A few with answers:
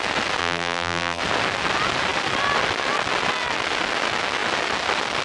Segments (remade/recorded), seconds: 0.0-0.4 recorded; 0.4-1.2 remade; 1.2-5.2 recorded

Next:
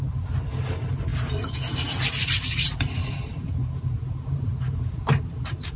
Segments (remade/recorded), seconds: 0.0-1.1 recorded; 1.1-1.6 remade; 1.6-2.2 recorded; 2.2-5.8 remade